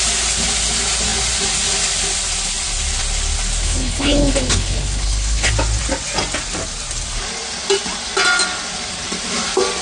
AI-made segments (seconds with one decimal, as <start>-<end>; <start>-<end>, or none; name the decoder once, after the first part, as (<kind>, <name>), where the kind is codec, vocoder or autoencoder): 3.6-5.5 (codec, HILCodec)